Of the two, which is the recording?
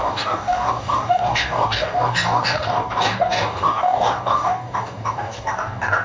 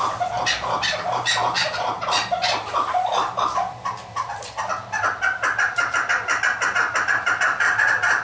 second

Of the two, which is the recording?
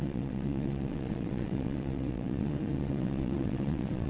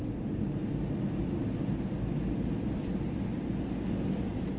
second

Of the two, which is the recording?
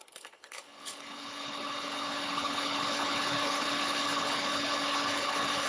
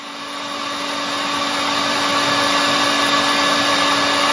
second